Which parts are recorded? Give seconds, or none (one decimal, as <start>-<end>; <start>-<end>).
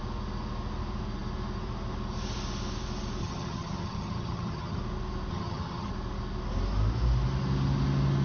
0.0-3.2; 4.8-5.3; 5.9-8.2